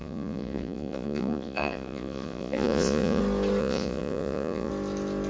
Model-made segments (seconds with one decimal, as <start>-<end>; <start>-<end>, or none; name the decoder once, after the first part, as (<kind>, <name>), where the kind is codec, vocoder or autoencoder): 0.0-3.2 (vocoder, Vocos); 3.6-4.7